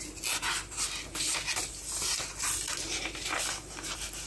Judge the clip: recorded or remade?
recorded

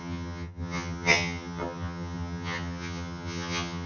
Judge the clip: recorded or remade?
remade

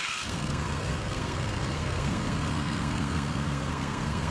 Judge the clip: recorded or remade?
remade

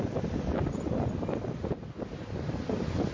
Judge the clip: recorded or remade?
recorded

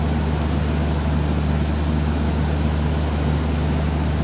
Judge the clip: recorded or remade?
recorded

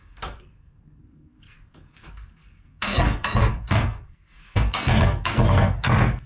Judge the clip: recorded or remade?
remade